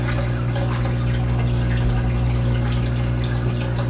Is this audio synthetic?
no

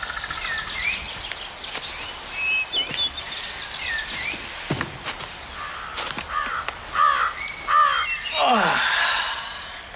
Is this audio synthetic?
no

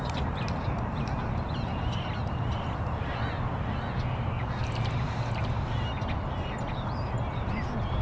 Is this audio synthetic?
no